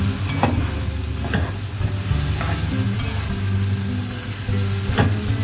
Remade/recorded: recorded